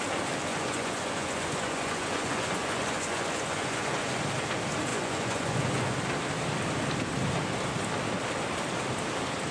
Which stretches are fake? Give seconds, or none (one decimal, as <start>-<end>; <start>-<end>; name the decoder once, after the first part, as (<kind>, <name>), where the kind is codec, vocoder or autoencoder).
0.5-4.2 (vocoder, Vocos); 4.9-5.9